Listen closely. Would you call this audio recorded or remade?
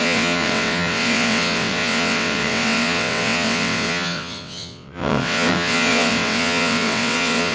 remade